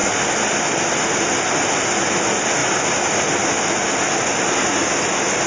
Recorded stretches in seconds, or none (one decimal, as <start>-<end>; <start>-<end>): 0.0-5.5